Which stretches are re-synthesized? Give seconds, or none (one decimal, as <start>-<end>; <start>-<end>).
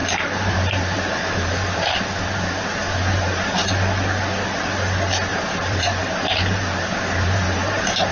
0.0-3.7; 5.3-8.1